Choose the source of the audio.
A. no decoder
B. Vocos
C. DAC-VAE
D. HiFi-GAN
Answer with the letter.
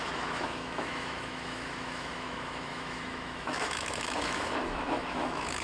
C